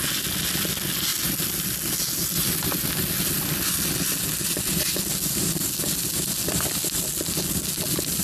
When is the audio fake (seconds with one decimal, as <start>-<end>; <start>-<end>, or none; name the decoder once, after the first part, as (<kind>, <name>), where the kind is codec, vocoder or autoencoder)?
none

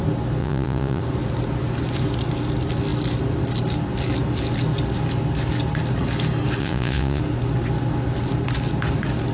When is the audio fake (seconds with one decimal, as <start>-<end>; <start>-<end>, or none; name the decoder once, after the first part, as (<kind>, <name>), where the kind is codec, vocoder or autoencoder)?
0.4-1.0 (vocoder, Vocos); 6.6-7.2

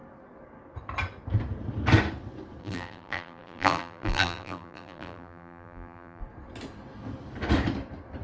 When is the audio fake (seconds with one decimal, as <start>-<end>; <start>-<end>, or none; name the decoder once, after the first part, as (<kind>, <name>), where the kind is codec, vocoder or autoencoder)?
2.6-6.2 (vocoder, BigVGAN v2)

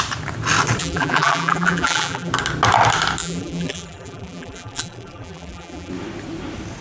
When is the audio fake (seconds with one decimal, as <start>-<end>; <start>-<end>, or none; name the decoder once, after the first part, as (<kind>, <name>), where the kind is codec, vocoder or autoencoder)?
0.8-2.3 (vocoder, BigVGAN v2); 3.2-5.9

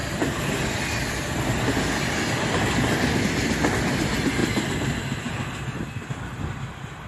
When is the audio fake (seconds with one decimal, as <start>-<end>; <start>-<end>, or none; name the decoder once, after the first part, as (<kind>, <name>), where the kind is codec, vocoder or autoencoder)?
none

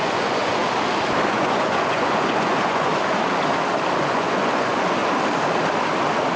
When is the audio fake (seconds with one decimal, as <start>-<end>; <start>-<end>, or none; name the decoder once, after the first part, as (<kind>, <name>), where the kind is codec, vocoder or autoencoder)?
0.0-0.6 (vocoder, Vocos); 1.3-2.9; 4.0-5.0